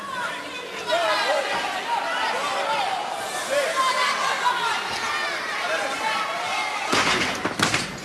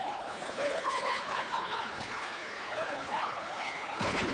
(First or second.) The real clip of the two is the first